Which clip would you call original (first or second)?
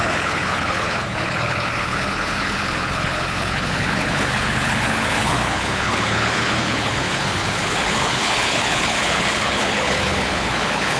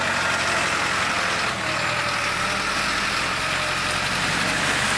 second